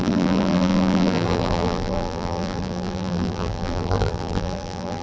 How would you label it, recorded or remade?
remade